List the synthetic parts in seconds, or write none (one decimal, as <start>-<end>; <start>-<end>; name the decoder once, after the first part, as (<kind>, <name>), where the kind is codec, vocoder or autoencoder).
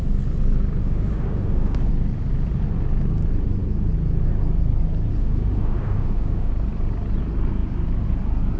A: 0.8-1.9 (autoencoder, DAC-VAE); 5.2-6.5